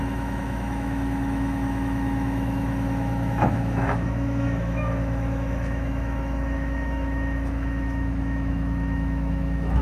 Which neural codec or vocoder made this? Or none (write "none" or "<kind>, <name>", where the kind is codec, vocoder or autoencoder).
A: autoencoder, DAC-VAE